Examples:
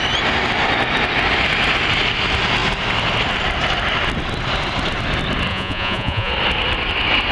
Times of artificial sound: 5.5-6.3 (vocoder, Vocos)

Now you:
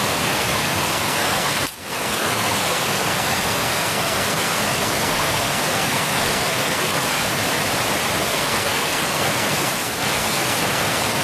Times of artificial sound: 0.0-7.4 (codec, SNAC); 8.2-11.2